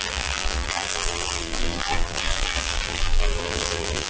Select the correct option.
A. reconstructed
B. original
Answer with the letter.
A